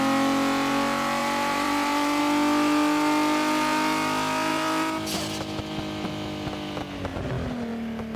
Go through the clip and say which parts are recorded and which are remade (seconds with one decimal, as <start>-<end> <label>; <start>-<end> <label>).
0.0-1.2 recorded; 1.2-2.2 remade; 2.2-4.5 recorded; 4.5-6.1 remade; 6.1-7.1 recorded; 7.1-7.7 remade; 7.7-8.2 recorded